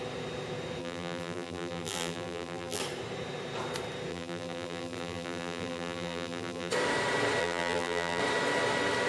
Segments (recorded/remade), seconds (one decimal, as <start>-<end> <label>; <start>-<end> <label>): 0.0-0.8 recorded; 0.8-2.8 remade; 2.8-4.1 recorded; 4.1-6.7 remade; 6.7-7.4 recorded; 7.4-8.2 remade; 8.2-9.1 recorded